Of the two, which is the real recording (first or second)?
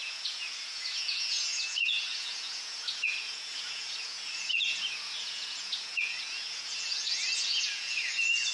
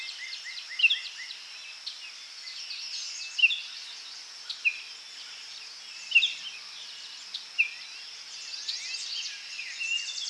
second